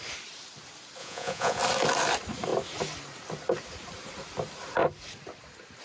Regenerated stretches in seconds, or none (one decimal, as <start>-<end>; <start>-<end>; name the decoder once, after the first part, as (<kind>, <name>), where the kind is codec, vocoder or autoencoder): 1.0-1.6 (vocoder, Vocos)